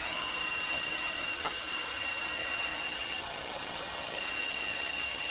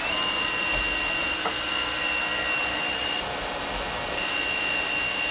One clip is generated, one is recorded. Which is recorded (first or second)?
second